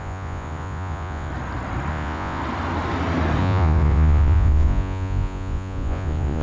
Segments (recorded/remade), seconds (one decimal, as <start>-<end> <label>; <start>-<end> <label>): 0.0-1.3 remade; 1.3-1.9 recorded; 1.9-2.4 remade; 2.4-3.4 recorded; 3.4-6.4 remade